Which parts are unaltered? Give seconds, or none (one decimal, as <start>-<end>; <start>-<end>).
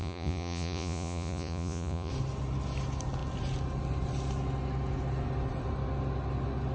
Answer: 2.1-6.7